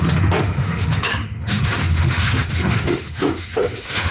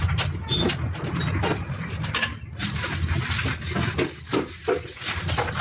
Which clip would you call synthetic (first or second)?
first